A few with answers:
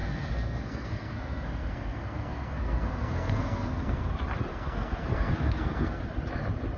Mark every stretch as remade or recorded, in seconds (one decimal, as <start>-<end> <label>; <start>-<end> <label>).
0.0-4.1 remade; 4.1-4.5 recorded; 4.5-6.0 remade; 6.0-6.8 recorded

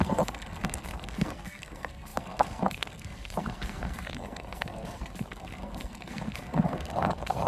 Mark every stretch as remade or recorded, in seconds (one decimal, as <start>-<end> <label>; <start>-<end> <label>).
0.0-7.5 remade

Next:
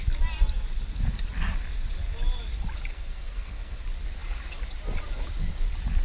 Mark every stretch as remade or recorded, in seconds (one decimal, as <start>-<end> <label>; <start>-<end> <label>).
0.0-2.9 recorded; 2.9-3.8 remade; 3.8-6.0 recorded

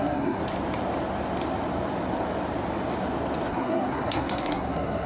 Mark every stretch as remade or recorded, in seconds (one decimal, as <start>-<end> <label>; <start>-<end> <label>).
0.0-0.4 remade; 0.4-3.5 recorded; 3.5-5.1 remade

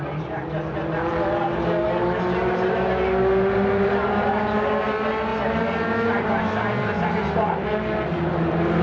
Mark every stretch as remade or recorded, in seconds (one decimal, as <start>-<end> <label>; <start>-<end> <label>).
0.0-8.8 recorded

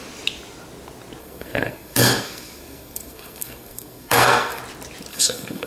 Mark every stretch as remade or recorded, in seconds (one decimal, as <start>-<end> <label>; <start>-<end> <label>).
0.0-1.2 recorded; 1.2-4.6 remade; 4.6-5.1 recorded; 5.1-5.7 remade